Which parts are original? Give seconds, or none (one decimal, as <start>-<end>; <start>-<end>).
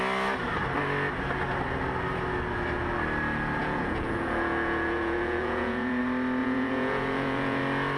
0.0-3.6; 6.0-6.4; 7.6-8.0